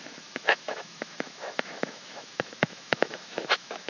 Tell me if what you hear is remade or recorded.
remade